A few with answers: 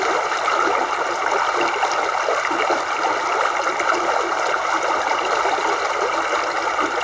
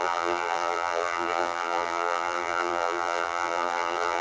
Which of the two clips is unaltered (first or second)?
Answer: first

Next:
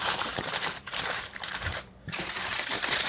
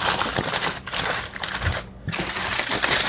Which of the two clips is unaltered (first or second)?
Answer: second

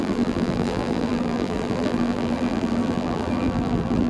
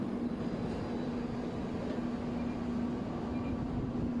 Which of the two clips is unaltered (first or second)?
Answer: second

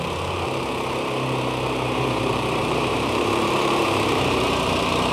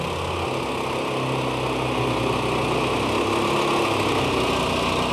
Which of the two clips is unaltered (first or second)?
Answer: second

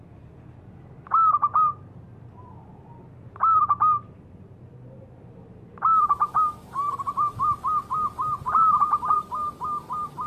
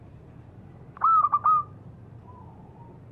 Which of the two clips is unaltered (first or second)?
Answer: first